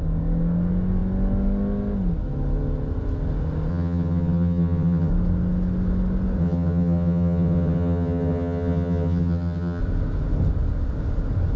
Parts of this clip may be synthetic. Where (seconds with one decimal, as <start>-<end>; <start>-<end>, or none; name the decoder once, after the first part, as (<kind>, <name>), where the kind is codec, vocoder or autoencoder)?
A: 3.7-5.1 (vocoder, HiFi-GAN); 6.4-9.8